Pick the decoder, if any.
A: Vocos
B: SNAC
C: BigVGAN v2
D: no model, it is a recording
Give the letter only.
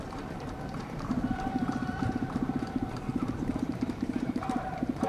C